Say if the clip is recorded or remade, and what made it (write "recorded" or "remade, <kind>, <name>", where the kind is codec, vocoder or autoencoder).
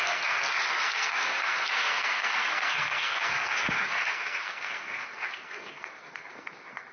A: remade, codec, SNAC